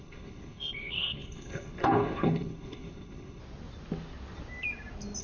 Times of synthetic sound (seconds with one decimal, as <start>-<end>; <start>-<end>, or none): 0.0-3.4

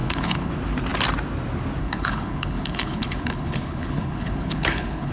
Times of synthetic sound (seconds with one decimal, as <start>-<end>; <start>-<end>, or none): 0.0-0.5; 1.8-5.1

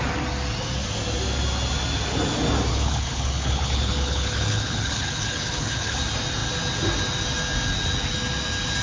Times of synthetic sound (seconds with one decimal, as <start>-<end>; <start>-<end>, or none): 2.7-6.0

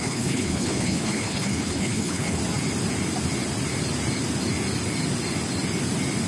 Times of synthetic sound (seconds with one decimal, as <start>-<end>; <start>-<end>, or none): 0.0-2.4

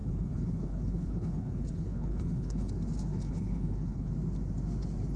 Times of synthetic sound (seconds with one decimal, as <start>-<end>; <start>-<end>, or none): 0.0-2.7; 3.1-4.1

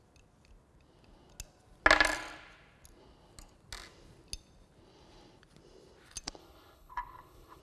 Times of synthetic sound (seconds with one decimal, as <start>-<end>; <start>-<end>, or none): 6.4-7.6